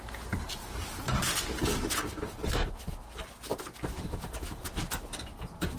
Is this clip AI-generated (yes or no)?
no